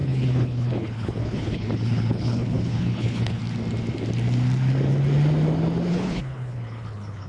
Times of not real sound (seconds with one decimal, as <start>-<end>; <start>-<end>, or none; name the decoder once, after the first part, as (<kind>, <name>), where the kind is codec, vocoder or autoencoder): 0.0-3.4 (codec, HILCodec); 5.9-7.3